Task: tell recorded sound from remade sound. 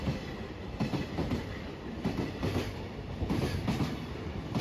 remade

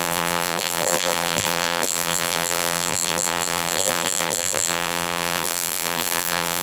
remade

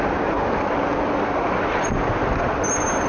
recorded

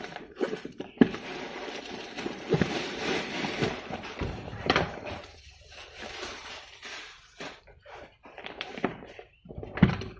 remade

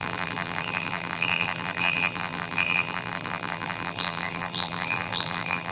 remade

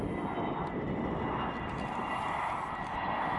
recorded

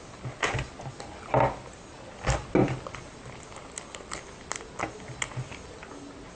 recorded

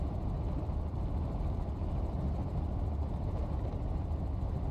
recorded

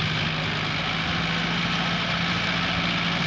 recorded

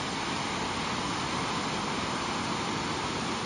recorded